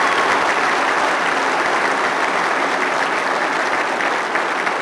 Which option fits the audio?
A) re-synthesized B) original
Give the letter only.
B